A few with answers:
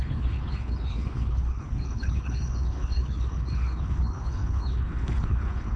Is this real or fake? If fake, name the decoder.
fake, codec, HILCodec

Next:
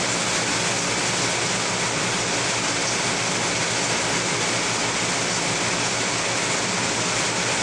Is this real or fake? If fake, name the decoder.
real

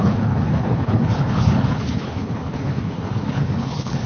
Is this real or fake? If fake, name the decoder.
fake, codec, HILCodec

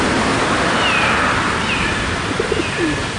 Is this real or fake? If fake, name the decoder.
real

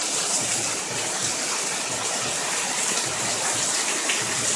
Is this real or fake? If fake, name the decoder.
real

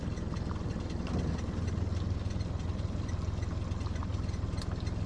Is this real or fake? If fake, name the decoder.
real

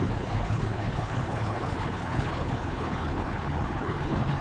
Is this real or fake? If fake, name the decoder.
fake, codec, HILCodec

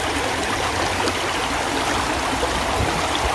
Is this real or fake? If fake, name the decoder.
real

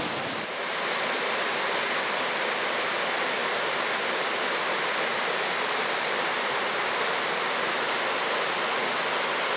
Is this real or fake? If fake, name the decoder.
real